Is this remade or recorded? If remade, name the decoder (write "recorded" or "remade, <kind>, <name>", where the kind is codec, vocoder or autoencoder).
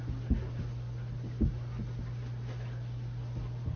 recorded